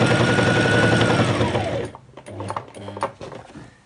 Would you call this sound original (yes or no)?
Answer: yes